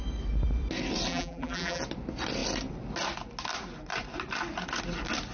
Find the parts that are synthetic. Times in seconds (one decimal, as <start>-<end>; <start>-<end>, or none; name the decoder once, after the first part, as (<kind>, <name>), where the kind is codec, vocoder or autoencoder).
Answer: 1.1-1.8 (vocoder, BigVGAN v2)